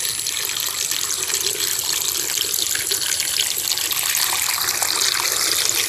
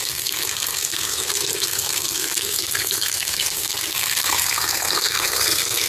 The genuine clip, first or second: first